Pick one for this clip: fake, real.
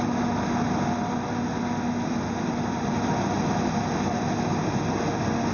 real